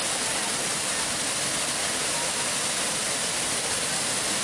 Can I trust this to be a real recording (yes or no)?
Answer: yes